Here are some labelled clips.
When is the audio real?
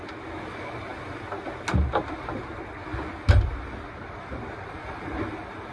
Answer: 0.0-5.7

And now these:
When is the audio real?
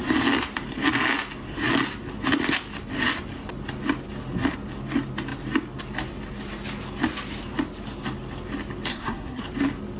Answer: 0.0-8.9; 9.4-10.0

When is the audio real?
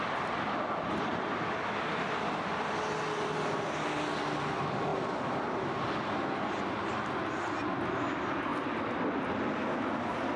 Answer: 0.0-10.4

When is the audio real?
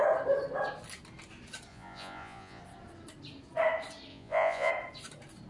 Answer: 0.0-1.7; 2.6-4.1; 4.7-5.5